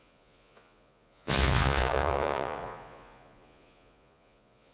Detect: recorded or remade remade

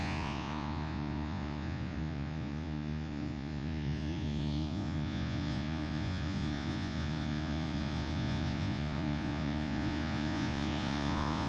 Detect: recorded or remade remade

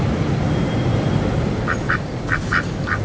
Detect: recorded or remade recorded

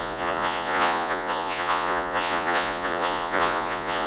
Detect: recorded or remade remade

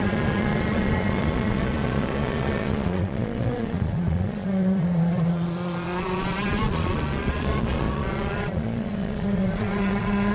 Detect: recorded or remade remade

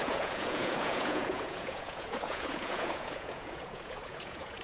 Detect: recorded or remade remade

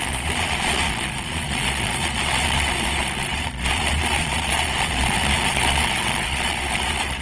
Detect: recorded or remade remade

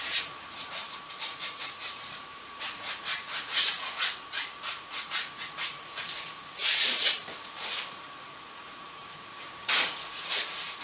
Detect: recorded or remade remade